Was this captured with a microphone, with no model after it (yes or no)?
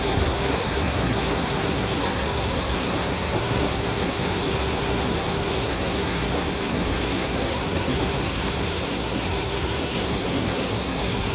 no